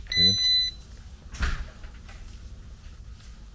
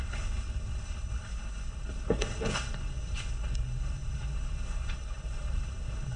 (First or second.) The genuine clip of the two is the first